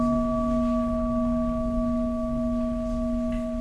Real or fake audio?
real